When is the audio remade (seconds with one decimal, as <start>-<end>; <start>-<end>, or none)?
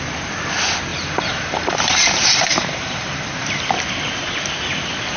0.9-3.8